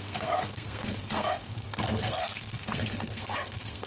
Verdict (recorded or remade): remade